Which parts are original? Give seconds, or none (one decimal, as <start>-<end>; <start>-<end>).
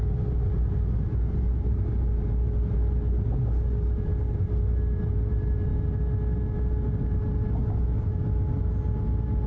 0.0-9.5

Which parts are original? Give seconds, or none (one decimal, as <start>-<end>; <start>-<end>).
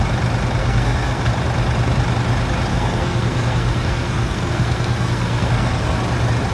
0.0-0.6; 1.2-2.7; 6.0-6.5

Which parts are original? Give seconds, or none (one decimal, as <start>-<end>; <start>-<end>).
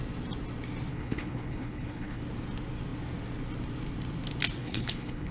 0.0-0.9; 2.2-4.6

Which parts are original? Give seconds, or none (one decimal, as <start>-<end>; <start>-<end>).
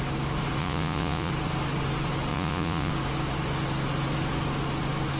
0.0-0.6; 1.3-2.3; 2.9-5.2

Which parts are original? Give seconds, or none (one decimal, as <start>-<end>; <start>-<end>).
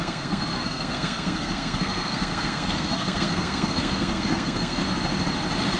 4.8-5.8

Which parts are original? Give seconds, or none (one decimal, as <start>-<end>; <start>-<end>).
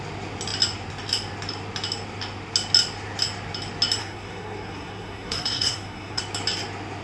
0.0-4.0; 6.2-7.0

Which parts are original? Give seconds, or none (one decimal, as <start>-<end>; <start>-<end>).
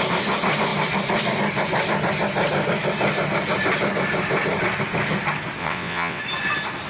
0.0-5.6; 6.2-6.9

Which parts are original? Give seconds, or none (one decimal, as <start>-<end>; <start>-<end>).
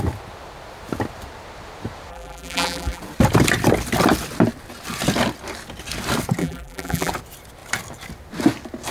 0.0-2.1; 3.0-6.4; 7.1-8.9